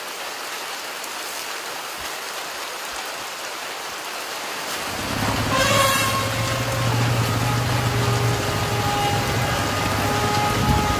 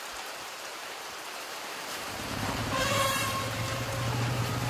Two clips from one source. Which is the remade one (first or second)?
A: second